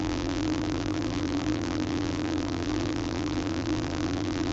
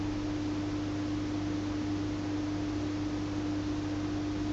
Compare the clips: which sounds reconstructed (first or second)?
first